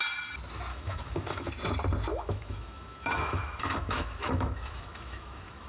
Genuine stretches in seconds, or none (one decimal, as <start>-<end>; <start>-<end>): 0.0-0.7; 1.5-2.1